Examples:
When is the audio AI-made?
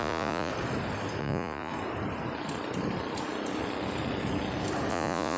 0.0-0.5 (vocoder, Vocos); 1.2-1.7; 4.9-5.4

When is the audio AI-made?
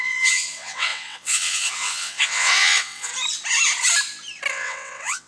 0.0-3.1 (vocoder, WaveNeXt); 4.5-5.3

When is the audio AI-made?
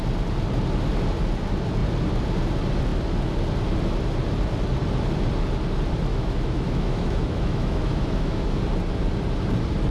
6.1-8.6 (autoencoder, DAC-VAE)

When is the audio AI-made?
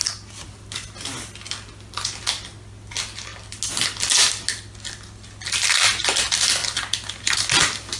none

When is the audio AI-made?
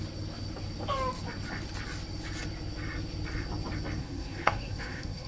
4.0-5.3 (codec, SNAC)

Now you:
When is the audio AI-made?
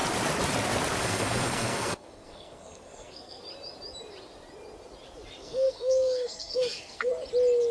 1.0-3.4 (codec, SNAC); 5.4-7.1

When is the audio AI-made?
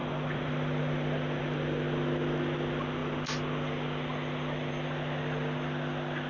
none